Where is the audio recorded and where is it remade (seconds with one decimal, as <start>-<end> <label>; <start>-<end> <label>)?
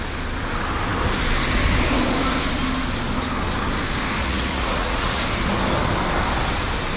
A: 0.0-4.2 recorded; 4.2-5.2 remade; 5.2-7.0 recorded